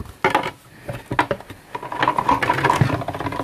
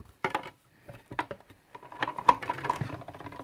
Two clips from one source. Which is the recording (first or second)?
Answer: first